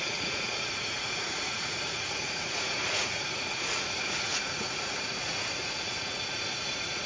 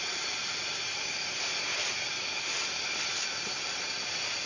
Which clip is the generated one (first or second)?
first